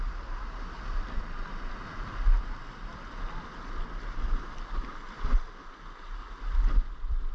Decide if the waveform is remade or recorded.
recorded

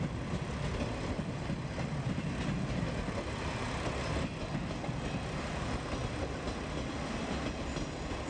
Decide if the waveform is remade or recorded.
recorded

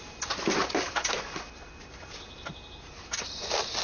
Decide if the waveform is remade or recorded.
recorded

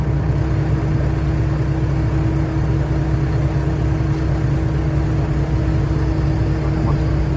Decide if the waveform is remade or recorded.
recorded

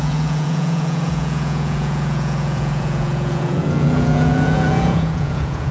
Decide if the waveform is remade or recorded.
remade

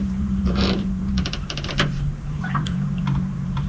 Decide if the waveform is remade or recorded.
remade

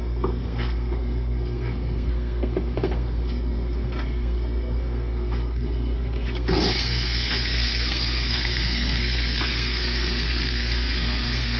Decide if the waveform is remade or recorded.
remade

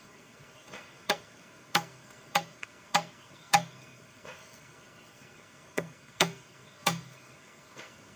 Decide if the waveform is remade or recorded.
remade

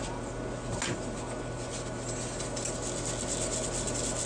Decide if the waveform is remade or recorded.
recorded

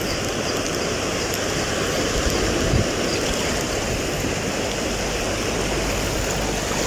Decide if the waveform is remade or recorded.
recorded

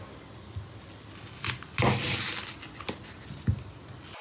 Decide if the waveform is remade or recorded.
recorded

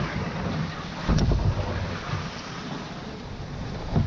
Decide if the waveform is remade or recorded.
recorded